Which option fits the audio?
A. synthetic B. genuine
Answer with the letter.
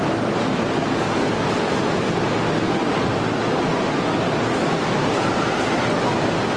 B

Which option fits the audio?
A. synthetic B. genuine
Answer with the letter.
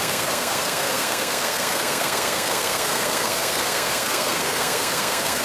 A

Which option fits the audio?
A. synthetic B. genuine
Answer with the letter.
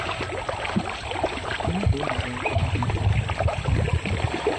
B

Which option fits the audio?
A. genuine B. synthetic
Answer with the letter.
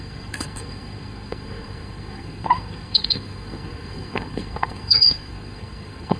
B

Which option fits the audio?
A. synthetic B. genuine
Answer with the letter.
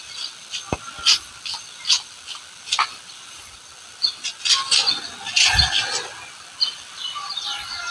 B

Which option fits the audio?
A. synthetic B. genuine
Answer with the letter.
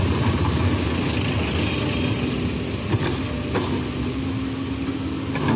B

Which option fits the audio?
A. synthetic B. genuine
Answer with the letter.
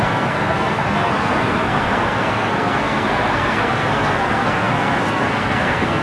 A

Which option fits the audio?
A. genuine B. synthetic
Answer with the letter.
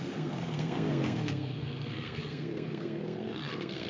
B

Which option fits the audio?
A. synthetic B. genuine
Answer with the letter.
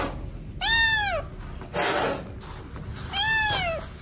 B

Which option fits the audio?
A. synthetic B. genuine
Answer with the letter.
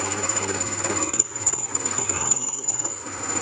A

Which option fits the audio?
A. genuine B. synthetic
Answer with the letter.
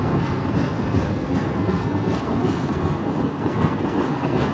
B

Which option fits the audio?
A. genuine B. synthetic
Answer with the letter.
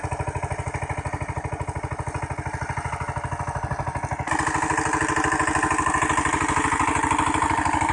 A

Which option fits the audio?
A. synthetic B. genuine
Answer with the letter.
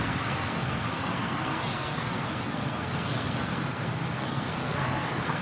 A